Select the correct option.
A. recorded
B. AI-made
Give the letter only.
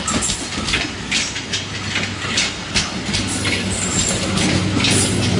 A